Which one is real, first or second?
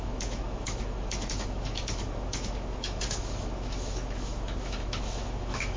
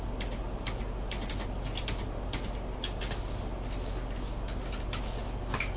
second